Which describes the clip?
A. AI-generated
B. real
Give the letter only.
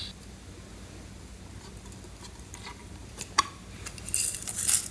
B